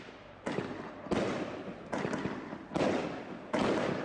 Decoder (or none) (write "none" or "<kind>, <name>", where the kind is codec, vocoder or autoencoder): none